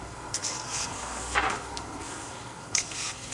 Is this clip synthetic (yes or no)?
yes